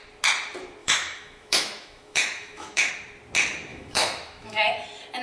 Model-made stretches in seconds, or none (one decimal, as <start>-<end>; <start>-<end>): 0.8-2.9; 3.7-4.8